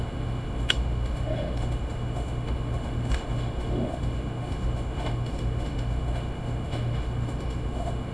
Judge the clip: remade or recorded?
remade